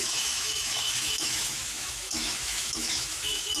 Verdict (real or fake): fake